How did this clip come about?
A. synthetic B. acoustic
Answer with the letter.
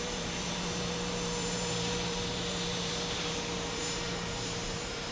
A